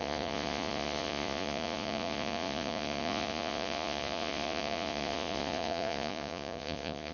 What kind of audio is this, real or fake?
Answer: fake